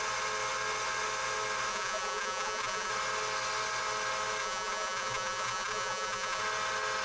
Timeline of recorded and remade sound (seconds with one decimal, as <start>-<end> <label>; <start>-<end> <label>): 0.0-1.7 recorded; 1.7-2.9 remade; 2.9-4.4 recorded; 4.4-6.4 remade; 6.4-7.0 recorded

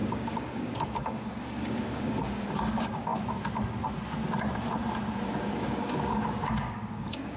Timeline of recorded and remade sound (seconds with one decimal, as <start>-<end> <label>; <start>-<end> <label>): 0.0-3.1 remade; 3.1-5.3 recorded; 5.3-7.4 remade

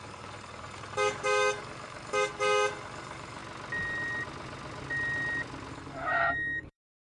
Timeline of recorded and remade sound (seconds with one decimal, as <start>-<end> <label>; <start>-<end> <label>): 0.0-3.4 remade; 3.4-5.7 recorded; 5.7-7.1 remade

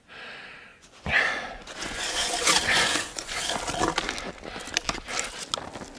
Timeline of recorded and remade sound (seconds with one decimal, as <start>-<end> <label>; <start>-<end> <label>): 0.0-0.7 recorded; 0.7-3.4 remade; 3.4-6.0 recorded